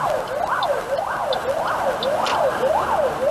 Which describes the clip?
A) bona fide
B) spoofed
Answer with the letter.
A